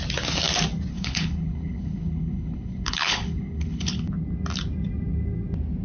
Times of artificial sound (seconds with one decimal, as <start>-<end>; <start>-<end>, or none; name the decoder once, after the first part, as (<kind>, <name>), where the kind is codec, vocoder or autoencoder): 0.9-4.0 (codec, HILCodec)